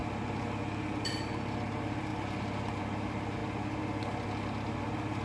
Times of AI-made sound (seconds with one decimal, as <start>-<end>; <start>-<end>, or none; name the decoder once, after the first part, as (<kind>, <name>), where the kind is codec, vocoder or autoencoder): none